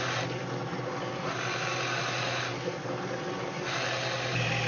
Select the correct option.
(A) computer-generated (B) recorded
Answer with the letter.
B